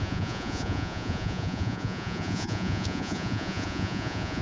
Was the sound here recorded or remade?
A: remade